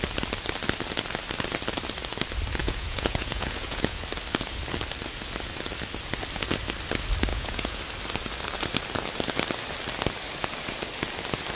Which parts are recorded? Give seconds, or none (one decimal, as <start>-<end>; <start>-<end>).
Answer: 0.0-2.6; 4.0-7.3; 7.8-11.6